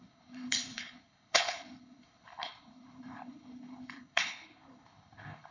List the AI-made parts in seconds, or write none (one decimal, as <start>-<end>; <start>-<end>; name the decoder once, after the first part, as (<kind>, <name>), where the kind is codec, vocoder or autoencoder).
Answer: 0.0-5.5 (codec, HILCodec)